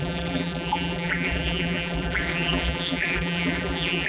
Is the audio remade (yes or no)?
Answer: yes